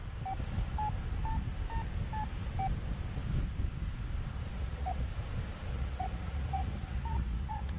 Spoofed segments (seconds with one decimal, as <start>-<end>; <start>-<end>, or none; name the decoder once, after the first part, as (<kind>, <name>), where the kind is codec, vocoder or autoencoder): 4.5-5.1 (vocoder, Vocos); 5.7-7.8